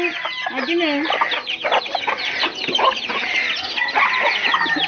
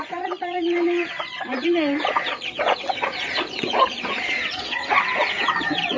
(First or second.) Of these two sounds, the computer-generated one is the second